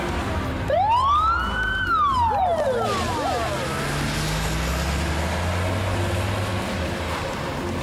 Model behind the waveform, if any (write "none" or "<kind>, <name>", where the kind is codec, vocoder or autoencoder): none